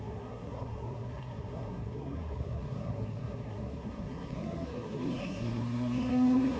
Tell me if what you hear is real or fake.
fake